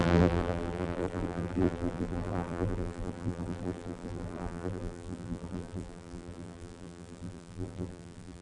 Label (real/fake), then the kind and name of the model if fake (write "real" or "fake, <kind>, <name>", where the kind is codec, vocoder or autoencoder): fake, vocoder, BigVGAN v2